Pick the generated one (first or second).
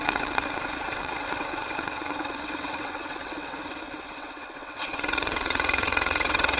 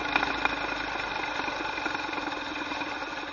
first